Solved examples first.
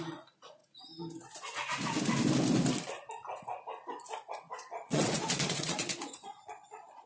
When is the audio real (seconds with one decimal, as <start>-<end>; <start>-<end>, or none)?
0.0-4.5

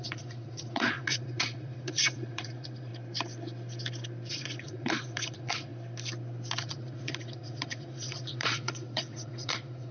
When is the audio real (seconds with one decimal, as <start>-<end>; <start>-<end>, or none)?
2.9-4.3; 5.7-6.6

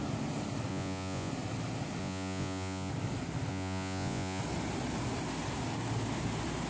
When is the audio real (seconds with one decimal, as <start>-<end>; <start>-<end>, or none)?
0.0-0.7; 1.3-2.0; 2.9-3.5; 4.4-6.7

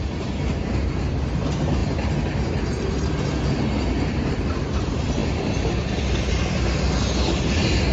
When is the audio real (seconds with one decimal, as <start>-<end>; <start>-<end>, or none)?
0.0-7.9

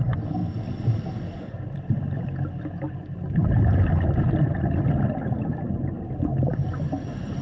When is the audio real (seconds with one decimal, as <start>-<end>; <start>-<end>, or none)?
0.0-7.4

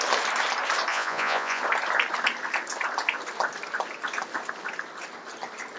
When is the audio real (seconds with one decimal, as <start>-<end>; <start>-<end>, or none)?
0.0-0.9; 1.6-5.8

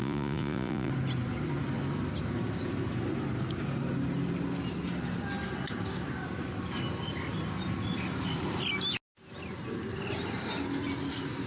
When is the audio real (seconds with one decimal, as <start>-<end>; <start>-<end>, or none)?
0.9-11.5